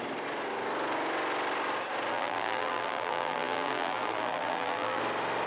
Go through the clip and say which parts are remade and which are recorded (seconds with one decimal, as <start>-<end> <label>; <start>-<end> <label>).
0.0-2.1 recorded; 2.1-5.0 remade; 5.0-5.5 recorded